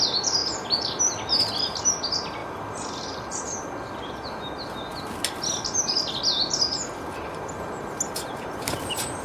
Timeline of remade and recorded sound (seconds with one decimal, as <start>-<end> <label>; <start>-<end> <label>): 0.0-0.4 recorded; 0.4-1.0 remade; 1.0-9.2 recorded